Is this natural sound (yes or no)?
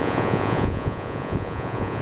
no